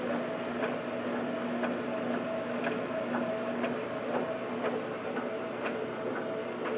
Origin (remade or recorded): recorded